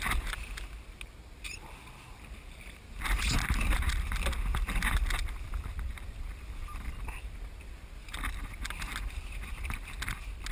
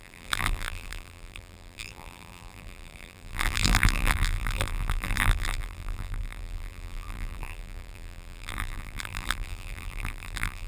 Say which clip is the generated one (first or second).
second